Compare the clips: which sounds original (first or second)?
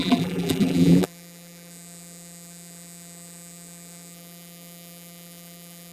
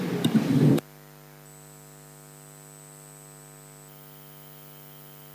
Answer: second